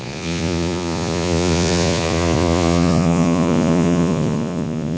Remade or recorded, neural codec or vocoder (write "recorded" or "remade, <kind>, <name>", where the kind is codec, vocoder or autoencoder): remade, vocoder, Vocos